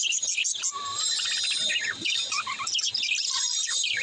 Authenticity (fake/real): real